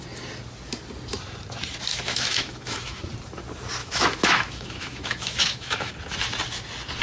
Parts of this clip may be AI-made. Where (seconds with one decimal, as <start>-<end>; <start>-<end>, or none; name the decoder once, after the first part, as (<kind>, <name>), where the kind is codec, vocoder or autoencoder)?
1.9-3.0 (autoencoder, DAC-VAE); 3.8-5.9

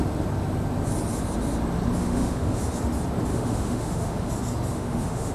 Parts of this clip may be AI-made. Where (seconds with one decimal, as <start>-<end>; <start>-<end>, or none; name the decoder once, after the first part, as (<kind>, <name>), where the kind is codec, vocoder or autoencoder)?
2.0-2.6 (autoencoder, DAC-VAE); 3.3-4.3; 4.7-5.3